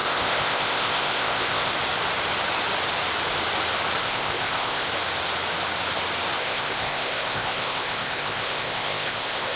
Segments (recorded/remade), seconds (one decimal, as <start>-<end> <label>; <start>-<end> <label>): 0.0-1.7 remade; 1.7-4.0 recorded; 4.0-4.9 remade; 4.9-6.4 recorded; 6.4-9.6 remade